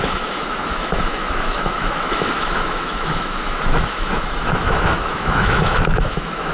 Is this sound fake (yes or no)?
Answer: yes